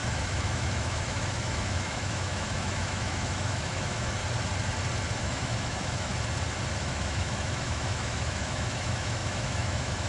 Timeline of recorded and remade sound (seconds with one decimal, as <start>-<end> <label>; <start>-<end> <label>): 0.0-4.2 remade; 4.2-5.2 recorded; 5.2-6.1 remade; 6.1-6.8 recorded; 6.8-10.1 remade